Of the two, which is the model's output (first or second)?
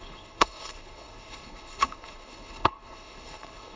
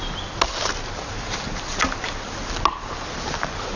first